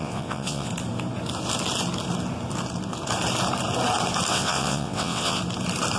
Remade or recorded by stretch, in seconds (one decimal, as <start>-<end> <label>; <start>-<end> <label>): 0.0-0.7 remade; 0.7-4.3 recorded; 4.3-5.4 remade; 5.4-6.0 recorded

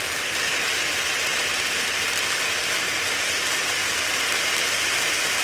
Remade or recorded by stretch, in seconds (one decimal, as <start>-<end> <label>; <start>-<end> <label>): 0.0-3.8 recorded; 3.8-4.7 remade; 4.7-5.4 recorded

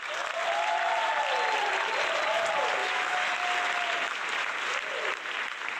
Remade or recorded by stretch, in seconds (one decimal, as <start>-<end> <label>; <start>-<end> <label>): 0.0-2.8 recorded; 2.8-3.3 remade; 3.3-5.8 recorded

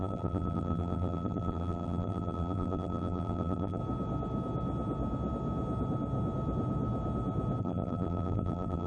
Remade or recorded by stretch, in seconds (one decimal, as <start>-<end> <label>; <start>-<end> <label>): 0.0-3.8 remade; 3.8-7.6 recorded; 7.6-8.9 remade

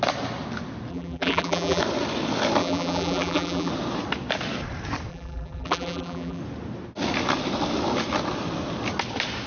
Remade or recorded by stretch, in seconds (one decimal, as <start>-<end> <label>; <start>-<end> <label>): 0.0-0.9 recorded; 0.9-1.8 remade; 1.8-2.6 recorded; 2.6-3.7 remade; 3.7-5.1 recorded; 5.1-6.4 remade; 6.4-9.5 recorded

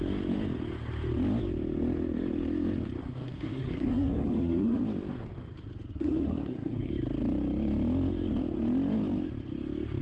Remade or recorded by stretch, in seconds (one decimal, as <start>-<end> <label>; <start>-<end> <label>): 0.0-3.0 recorded; 3.0-4.8 remade; 4.8-5.9 recorded; 5.9-6.9 remade; 6.9-10.0 recorded